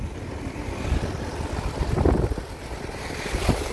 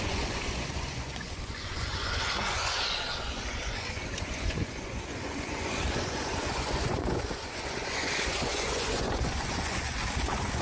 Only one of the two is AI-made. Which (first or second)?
second